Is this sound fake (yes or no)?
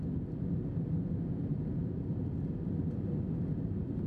no